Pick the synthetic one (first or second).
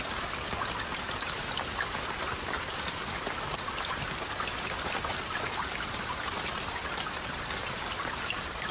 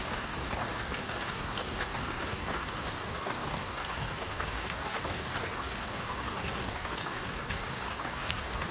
second